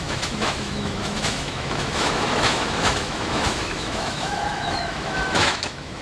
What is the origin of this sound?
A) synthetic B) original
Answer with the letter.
A